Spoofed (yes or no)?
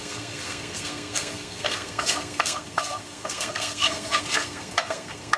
yes